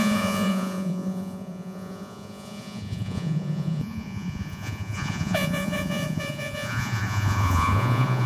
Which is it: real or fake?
fake